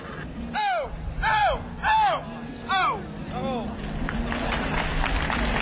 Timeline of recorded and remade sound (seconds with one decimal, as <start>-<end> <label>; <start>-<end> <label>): 0.0-5.6 recorded